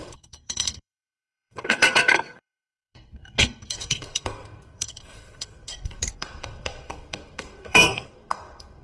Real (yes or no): no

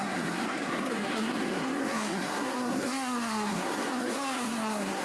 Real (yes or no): no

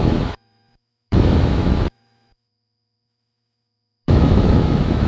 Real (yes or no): no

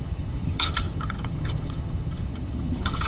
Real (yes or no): no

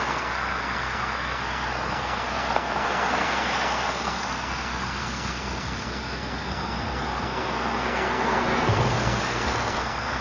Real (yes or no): no